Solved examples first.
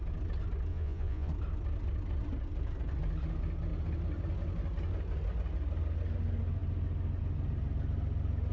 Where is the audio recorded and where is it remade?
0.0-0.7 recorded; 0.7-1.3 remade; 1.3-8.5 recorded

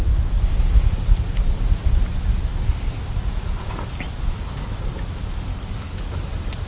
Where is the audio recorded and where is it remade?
0.0-5.5 recorded; 5.5-6.7 remade

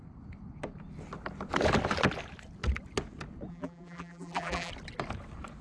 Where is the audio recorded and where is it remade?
0.0-3.5 recorded; 3.5-4.7 remade; 4.7-5.6 recorded

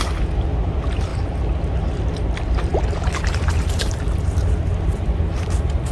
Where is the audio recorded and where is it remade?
0.0-5.9 recorded